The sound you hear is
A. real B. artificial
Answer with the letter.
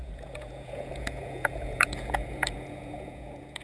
B